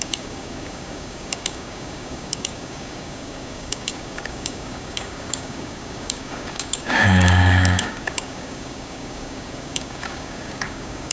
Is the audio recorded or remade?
remade